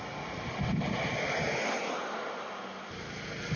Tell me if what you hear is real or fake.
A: real